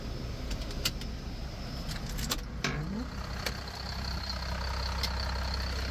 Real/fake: real